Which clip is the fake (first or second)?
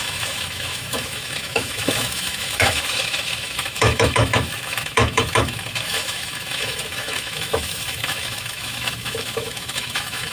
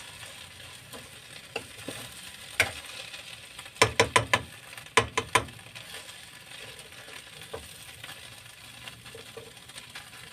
first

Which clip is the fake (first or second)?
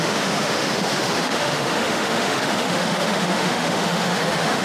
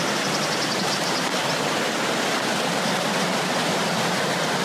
first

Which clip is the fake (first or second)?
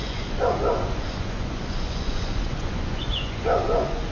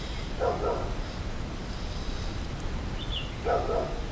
first